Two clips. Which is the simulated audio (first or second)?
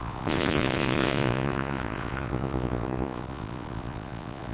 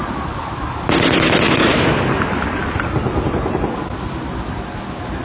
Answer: first